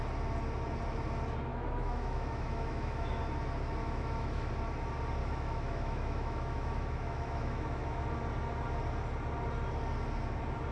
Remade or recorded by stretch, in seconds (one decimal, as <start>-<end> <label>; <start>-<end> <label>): 0.0-1.5 recorded; 1.5-3.2 remade; 3.2-3.8 recorded; 3.8-4.5 remade; 4.5-5.2 recorded; 5.2-8.1 remade; 8.1-10.7 recorded